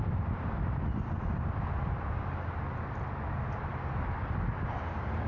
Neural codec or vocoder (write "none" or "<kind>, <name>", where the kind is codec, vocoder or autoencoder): none